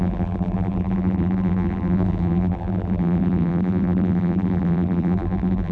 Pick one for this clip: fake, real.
fake